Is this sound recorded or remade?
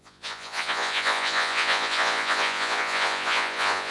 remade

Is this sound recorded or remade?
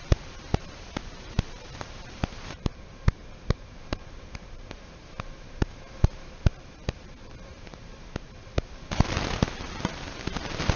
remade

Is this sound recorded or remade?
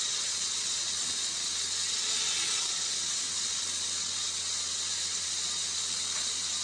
remade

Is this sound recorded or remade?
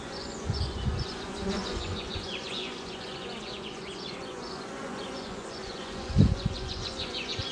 remade